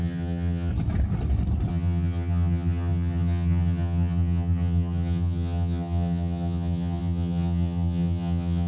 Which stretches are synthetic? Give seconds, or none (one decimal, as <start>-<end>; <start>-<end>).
0.0-0.7; 1.7-8.7